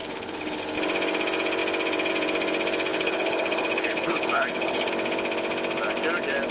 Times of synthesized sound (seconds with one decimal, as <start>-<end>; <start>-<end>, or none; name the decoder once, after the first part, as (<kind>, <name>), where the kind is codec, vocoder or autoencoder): 0.0-0.6 (codec, HILCodec); 2.9-4.9